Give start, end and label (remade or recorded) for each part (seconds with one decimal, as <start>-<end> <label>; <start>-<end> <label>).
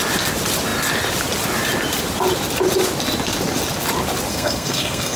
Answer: 0.0-4.3 recorded; 4.3-5.2 remade